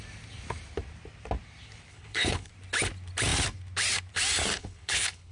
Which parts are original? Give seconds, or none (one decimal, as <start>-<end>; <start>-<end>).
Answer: 0.0-1.9; 2.5-4.5